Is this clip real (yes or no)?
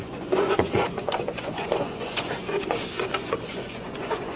no